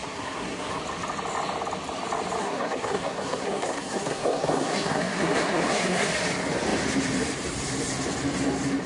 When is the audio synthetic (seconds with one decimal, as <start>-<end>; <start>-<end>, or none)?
0.0-0.8; 2.4-6.1